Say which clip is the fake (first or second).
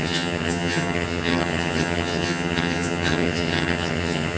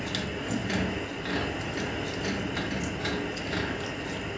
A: first